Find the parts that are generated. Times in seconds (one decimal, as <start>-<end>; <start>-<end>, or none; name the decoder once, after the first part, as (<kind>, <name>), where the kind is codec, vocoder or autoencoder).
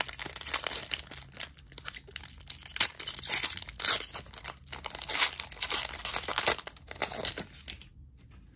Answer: none